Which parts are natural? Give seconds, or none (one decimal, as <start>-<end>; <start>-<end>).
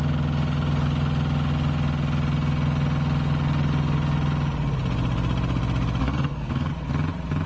0.0-6.0; 6.7-7.5